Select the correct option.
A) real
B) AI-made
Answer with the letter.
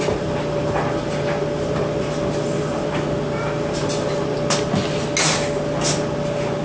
A